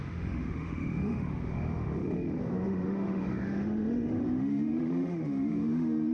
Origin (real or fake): fake